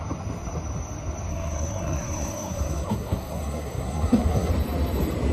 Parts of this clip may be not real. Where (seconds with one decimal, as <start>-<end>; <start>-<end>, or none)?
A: 1.3-4.5